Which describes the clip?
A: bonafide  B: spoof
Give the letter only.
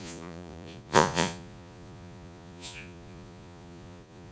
B